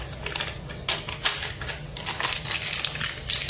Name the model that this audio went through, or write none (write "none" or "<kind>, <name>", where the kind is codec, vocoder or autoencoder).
none